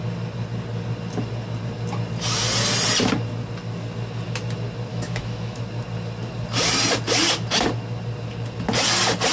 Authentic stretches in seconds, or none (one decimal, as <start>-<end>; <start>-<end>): 0.0-4.9; 5.6-9.3